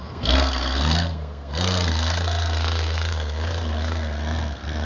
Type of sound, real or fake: fake